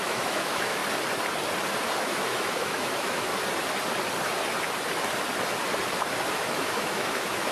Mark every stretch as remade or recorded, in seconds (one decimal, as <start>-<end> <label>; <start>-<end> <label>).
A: 0.0-0.8 remade; 0.8-2.0 recorded; 2.0-3.3 remade; 3.3-6.3 recorded; 6.3-7.5 remade